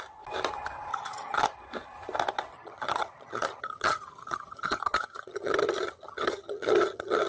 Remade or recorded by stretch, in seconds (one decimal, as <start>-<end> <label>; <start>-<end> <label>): 0.0-0.9 recorded; 0.9-1.4 remade; 1.4-2.5 recorded; 2.5-7.3 remade